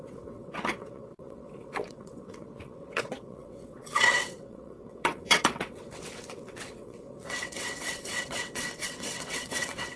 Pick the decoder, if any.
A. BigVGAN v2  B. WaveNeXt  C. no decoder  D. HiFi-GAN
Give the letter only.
B